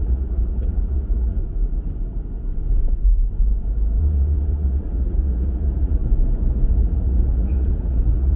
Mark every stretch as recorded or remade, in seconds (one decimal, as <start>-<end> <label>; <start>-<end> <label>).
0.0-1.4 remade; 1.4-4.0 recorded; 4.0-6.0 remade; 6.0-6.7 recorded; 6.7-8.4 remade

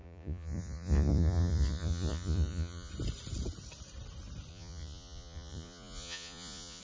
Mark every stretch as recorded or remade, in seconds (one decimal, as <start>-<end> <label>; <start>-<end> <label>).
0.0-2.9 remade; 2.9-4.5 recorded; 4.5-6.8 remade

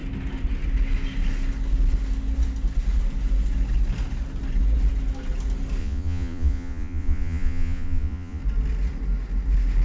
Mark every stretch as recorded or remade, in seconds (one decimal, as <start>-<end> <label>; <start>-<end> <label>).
0.0-5.8 recorded; 5.8-8.4 remade; 8.4-9.8 recorded

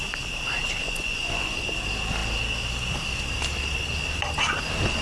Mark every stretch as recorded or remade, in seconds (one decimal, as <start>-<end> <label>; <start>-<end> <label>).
0.0-0.8 recorded; 0.8-1.7 remade; 1.7-5.0 recorded

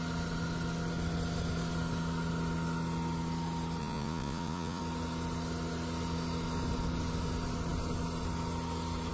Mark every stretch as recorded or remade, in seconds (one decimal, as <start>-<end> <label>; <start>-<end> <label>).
0.0-3.8 recorded; 3.8-4.8 remade; 4.8-9.1 recorded